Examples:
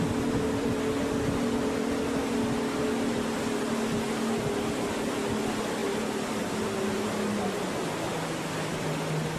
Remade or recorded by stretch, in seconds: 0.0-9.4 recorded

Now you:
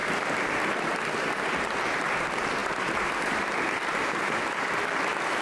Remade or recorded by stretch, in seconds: 0.0-0.5 remade; 0.5-2.6 recorded; 2.6-5.0 remade; 5.0-5.4 recorded

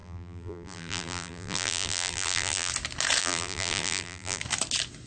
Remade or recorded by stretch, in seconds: 0.0-2.7 remade; 2.7-3.2 recorded; 3.2-4.4 remade; 4.4-5.1 recorded